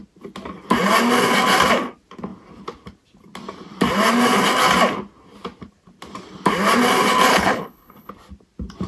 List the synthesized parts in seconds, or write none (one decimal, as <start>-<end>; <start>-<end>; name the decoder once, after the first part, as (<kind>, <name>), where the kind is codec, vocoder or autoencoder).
7.3-8.1 (codec, HILCodec)

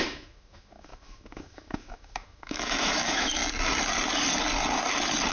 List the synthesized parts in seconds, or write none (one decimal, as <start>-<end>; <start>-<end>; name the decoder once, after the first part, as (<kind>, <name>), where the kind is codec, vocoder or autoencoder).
0.0-3.4 (autoencoder, DAC-VAE)